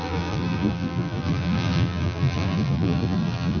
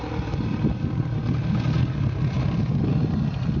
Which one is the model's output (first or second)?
first